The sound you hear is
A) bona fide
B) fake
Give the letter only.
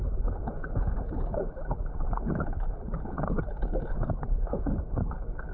B